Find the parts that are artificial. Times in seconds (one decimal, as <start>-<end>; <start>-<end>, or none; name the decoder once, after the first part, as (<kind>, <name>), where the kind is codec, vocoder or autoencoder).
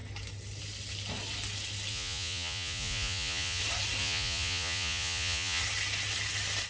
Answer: 1.9-3.6 (vocoder, Vocos); 4.0-5.6